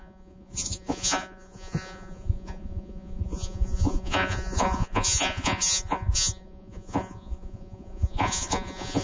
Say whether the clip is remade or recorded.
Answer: remade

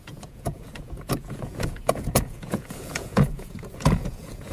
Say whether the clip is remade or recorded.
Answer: remade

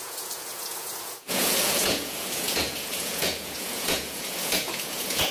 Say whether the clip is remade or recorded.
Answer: remade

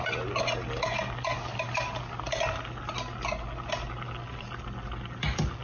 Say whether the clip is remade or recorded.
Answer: recorded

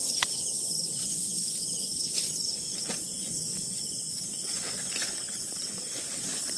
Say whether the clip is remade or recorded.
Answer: remade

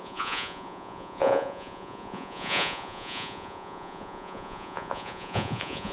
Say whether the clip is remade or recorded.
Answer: remade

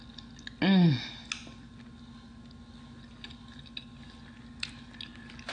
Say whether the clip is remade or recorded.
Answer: recorded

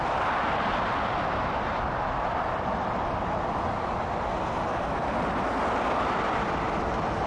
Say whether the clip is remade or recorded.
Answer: recorded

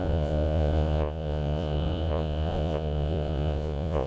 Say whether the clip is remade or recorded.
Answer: remade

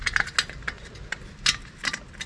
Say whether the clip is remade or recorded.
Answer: recorded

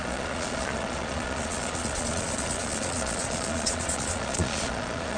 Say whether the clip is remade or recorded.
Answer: remade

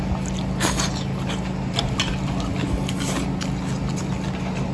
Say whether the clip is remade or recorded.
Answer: recorded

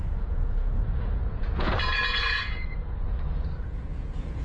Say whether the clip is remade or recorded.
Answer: remade